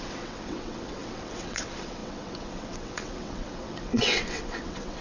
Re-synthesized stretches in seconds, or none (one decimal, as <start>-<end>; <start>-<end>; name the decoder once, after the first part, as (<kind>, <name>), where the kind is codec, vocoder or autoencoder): 0.0-5.0 (vocoder, WaveNeXt)